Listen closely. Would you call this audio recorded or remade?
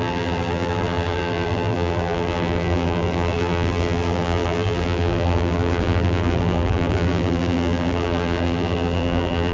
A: remade